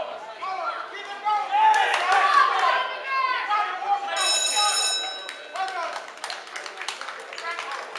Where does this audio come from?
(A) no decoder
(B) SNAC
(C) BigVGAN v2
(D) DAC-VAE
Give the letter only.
A